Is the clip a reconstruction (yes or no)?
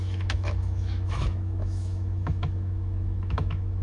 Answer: yes